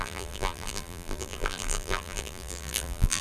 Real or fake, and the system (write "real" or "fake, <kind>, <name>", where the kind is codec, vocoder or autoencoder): fake, vocoder, BigVGAN v2